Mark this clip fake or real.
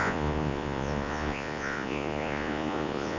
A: fake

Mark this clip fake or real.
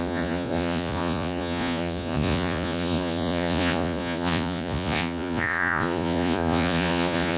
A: fake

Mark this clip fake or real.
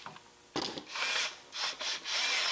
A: real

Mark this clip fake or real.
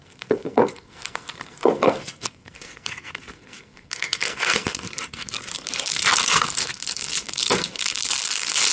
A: fake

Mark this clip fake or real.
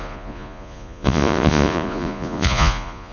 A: fake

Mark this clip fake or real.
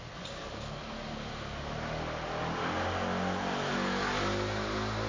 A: real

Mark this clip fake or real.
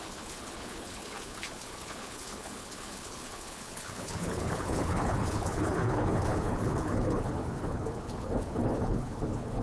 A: fake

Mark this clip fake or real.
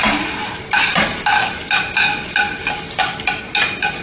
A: real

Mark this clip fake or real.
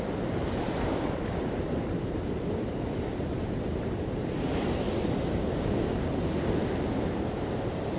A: real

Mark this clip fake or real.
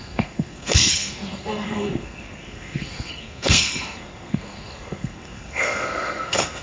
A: fake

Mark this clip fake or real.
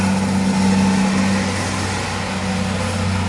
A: real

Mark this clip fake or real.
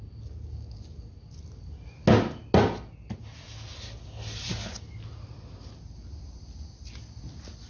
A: real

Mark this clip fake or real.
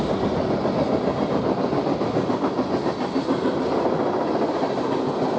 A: real